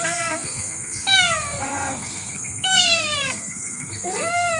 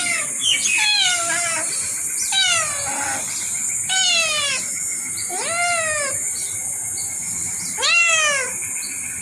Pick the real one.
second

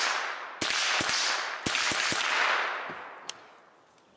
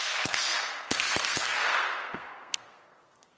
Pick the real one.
first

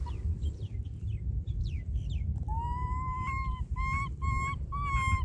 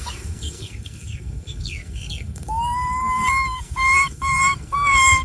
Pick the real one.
first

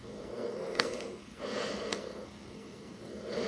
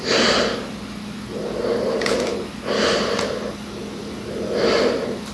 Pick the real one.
second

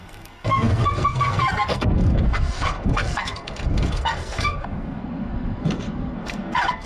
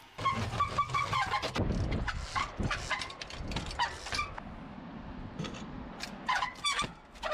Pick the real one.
second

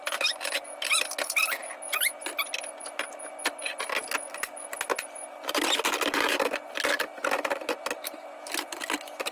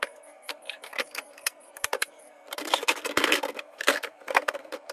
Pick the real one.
first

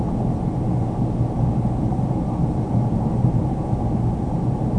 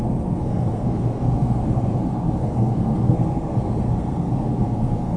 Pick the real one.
first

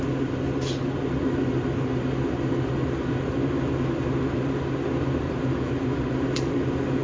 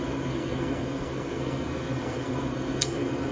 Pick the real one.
first